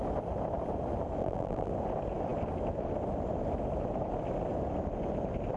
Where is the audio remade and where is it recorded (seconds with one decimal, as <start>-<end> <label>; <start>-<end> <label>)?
0.0-1.2 recorded; 1.2-1.7 remade; 1.7-5.6 recorded